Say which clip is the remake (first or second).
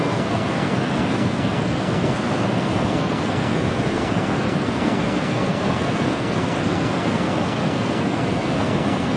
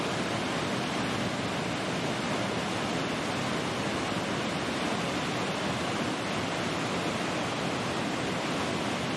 first